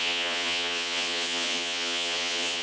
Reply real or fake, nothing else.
fake